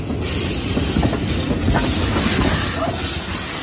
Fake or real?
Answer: real